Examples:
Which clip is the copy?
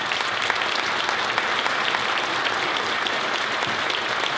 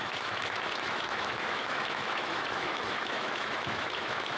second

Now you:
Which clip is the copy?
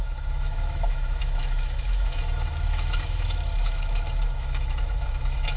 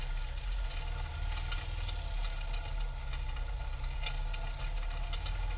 first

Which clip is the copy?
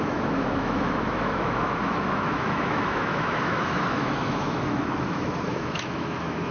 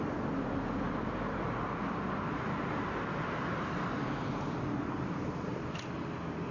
first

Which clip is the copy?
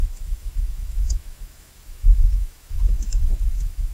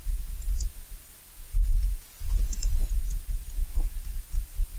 first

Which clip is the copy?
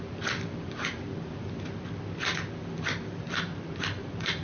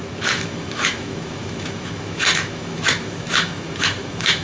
second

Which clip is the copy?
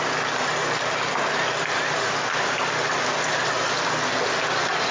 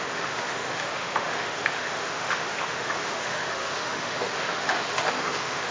second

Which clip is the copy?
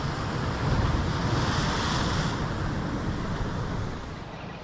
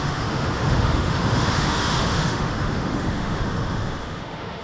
second